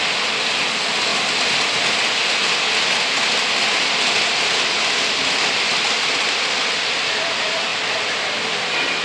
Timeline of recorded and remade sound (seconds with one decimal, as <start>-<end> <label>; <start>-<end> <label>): 0.0-1.1 remade; 1.1-6.3 recorded; 6.3-9.0 remade